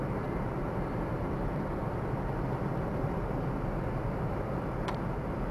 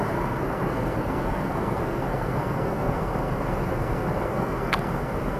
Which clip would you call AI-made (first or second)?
second